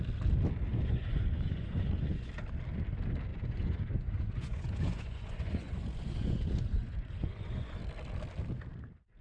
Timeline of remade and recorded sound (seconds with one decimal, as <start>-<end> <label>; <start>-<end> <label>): 0.0-0.7 recorded; 0.7-2.3 remade; 2.3-3.3 recorded; 3.3-7.8 remade; 7.8-9.2 recorded